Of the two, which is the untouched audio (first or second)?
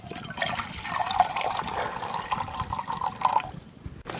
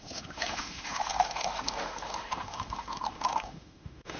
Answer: first